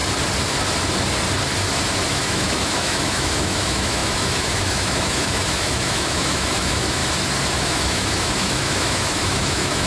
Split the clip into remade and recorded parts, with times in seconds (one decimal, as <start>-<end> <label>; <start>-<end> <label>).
0.0-2.1 recorded; 2.1-7.0 remade; 7.0-7.5 recorded; 7.5-9.9 remade